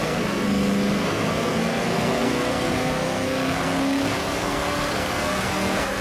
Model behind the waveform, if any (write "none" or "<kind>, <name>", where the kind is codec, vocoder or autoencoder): codec, SNAC